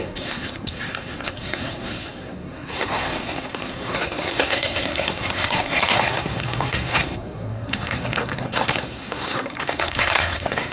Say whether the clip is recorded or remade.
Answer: remade